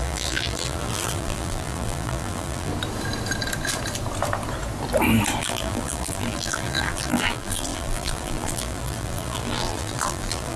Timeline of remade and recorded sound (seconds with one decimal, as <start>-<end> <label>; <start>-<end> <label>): 0.0-2.7 remade; 2.7-5.4 recorded; 5.4-10.6 remade